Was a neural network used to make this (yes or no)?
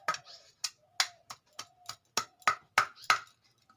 no